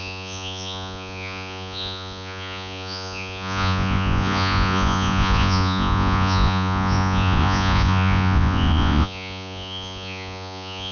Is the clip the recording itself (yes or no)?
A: no